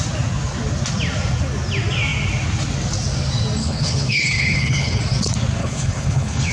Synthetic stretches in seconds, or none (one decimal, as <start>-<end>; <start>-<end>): 3.6-5.0; 5.6-6.5